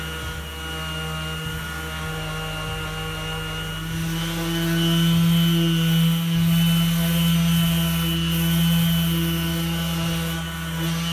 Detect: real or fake real